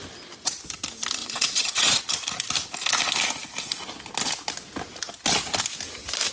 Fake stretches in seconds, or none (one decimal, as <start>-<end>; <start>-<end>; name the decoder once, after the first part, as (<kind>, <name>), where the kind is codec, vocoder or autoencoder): 1.2-2.0 (vocoder, WaveNeXt)